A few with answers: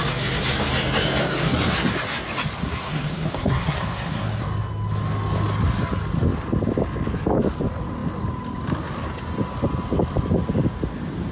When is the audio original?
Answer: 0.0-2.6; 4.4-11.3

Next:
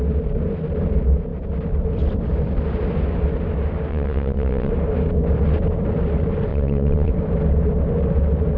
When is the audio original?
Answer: 0.0-3.9; 4.7-6.5; 7.1-8.6

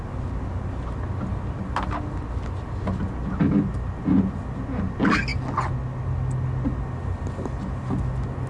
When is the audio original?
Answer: 0.0-8.5

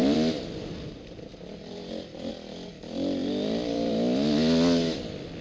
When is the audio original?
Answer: 2.3-3.2; 3.9-5.4

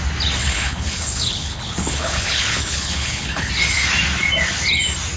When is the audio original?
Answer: 0.0-0.4; 3.5-5.2

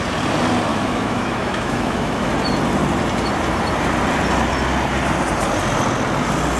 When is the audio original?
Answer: 0.0-0.7; 2.3-6.6